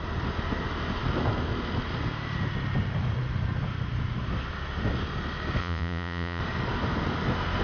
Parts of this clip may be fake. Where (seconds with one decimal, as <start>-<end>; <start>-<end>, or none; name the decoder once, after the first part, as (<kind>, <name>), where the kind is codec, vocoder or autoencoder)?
5.6-6.4 (vocoder, Vocos)